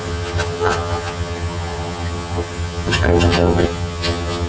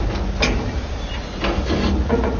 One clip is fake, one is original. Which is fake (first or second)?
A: first